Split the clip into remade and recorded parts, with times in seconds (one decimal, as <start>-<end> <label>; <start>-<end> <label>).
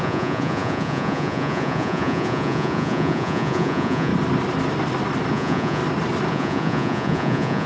0.0-4.1 remade; 4.1-5.3 recorded; 5.3-5.8 remade; 5.8-6.3 recorded; 6.3-7.7 remade